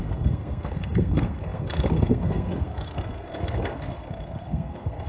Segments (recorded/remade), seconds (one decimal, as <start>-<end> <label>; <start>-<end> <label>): 0.0-5.1 remade